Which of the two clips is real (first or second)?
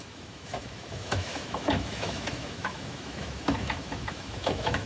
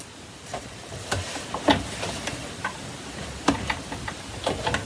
second